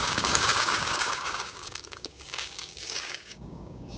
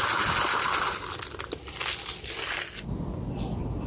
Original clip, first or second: second